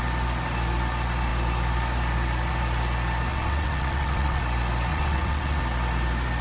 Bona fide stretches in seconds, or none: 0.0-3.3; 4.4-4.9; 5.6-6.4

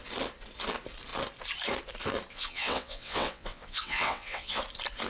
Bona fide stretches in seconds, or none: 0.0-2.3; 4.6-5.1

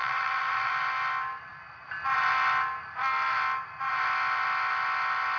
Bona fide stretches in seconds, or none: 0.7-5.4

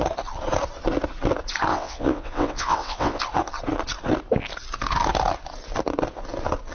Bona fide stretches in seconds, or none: 0.0-1.7; 3.2-6.7

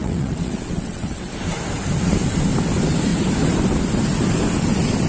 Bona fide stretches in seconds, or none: 1.3-5.1